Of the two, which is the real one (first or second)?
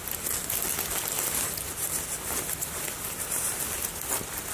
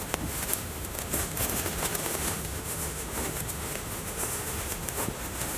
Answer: first